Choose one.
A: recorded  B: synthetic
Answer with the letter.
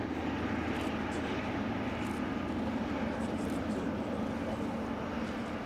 A